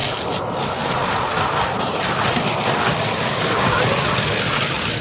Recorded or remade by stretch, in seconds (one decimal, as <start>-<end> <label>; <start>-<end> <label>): 0.0-3.3 recorded; 3.3-3.8 remade; 3.8-5.0 recorded